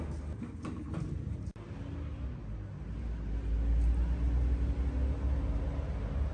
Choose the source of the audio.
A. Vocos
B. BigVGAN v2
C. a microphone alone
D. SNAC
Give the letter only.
C